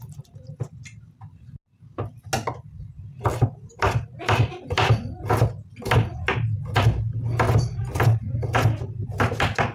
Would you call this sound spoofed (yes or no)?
no